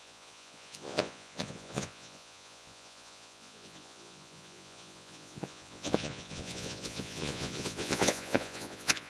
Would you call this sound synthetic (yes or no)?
yes